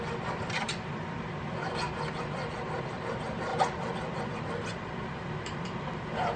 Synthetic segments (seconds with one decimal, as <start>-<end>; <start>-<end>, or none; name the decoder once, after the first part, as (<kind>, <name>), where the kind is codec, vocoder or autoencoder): none